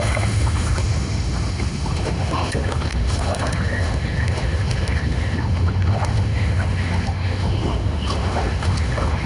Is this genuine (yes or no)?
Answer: no